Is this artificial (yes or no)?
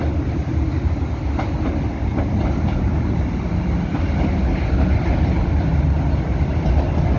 no